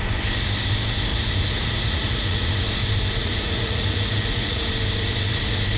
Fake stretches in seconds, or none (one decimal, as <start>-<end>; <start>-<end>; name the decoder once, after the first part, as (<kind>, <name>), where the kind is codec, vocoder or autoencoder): 1.1-2.5 (vocoder, Vocos); 3.2-4.7